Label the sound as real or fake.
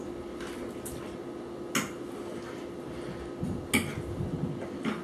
real